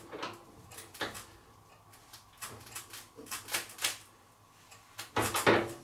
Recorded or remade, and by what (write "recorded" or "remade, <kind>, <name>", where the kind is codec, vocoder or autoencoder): recorded